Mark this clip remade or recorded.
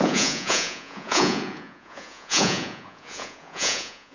remade